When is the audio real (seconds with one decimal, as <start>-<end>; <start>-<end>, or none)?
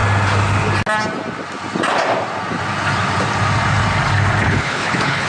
0.0-4.4